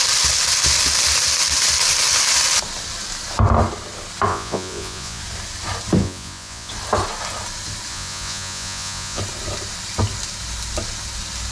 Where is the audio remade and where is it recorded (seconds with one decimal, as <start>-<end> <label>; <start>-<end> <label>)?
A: 0.0-4.3 recorded; 4.3-5.2 remade; 5.2-6.0 recorded; 6.0-6.7 remade; 6.7-7.9 recorded; 7.9-9.2 remade; 9.2-11.5 recorded